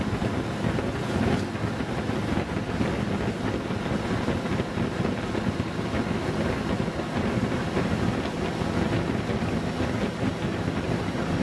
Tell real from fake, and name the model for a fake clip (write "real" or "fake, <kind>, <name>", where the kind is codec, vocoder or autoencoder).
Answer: real